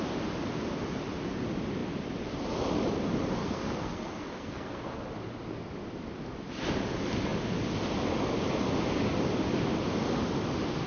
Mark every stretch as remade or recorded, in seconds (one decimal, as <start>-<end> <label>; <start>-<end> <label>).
0.0-3.4 recorded; 3.4-5.0 remade; 5.0-10.9 recorded

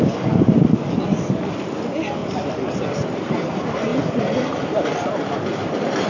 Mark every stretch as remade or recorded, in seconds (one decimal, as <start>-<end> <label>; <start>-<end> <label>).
0.0-1.1 recorded; 1.1-1.7 remade; 1.7-2.2 recorded; 2.2-3.3 remade; 3.3-3.9 recorded; 3.9-5.3 remade; 5.3-6.1 recorded

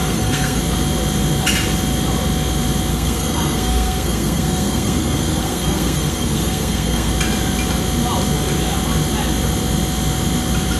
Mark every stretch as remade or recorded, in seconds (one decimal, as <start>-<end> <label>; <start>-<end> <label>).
0.0-0.6 remade; 0.6-2.9 recorded; 2.9-7.1 remade; 7.1-10.8 recorded

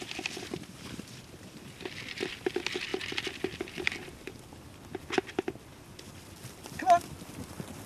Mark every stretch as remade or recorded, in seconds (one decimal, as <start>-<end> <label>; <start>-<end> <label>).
0.0-7.9 remade

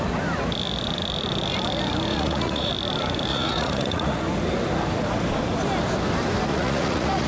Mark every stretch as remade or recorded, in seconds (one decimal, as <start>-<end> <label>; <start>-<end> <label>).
0.0-2.1 recorded; 2.1-2.7 remade; 2.7-3.3 recorded; 3.3-4.2 remade; 4.2-6.5 recorded; 6.5-7.3 remade